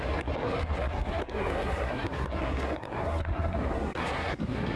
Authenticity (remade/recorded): remade